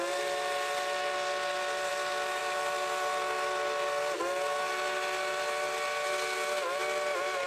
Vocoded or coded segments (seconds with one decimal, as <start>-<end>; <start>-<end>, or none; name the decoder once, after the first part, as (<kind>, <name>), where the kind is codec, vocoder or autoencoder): none